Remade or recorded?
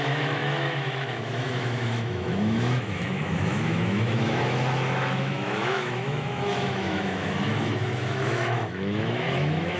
remade